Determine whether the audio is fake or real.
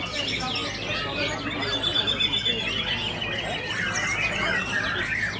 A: real